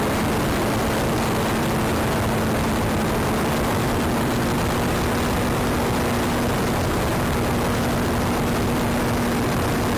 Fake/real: real